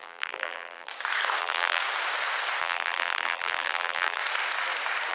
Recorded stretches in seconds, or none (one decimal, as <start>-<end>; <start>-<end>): 0.9-1.4; 1.8-2.6; 4.2-5.1